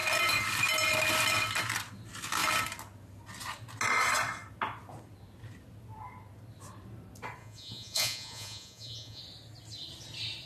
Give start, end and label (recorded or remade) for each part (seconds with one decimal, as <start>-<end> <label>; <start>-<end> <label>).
0.0-7.4 recorded; 7.4-9.2 remade; 9.2-10.5 recorded

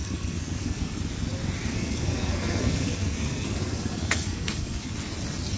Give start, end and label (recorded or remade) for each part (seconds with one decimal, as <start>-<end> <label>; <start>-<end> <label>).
0.0-1.0 remade; 1.0-1.7 recorded; 1.7-4.9 remade; 4.9-5.6 recorded